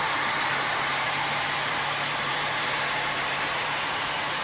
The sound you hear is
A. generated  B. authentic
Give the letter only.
A